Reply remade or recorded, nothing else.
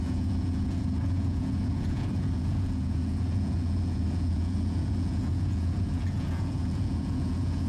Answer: remade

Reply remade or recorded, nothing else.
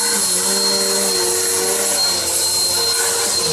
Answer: recorded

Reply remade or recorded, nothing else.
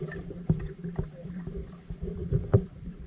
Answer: remade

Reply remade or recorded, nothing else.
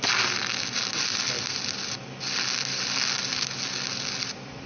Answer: recorded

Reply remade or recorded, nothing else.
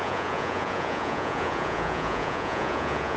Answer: remade